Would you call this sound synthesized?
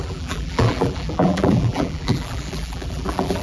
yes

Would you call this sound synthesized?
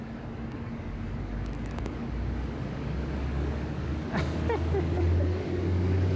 yes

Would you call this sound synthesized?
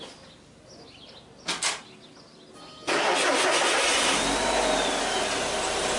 no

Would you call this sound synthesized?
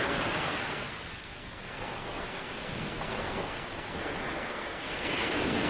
yes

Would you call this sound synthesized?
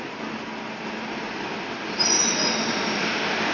no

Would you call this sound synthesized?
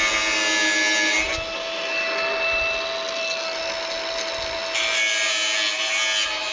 no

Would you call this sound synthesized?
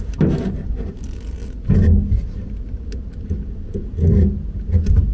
no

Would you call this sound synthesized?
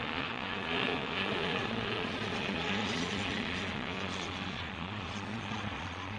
yes